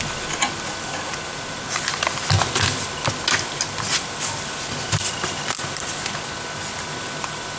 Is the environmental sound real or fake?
real